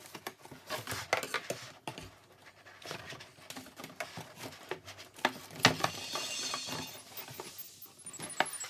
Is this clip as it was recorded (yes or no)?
yes